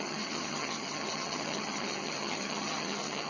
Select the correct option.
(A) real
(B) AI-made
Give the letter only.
B